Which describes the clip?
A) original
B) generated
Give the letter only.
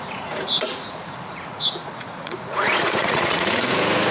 B